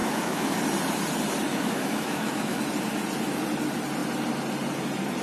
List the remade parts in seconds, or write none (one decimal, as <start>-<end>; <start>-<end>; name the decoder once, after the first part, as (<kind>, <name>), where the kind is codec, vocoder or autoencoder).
0.0-0.6 (autoencoder, DAC-VAE); 1.5-2.6